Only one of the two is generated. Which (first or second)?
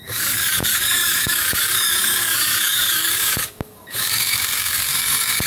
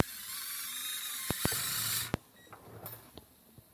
first